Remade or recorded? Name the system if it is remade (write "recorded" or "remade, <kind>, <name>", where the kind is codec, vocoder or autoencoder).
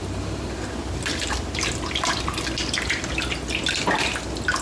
recorded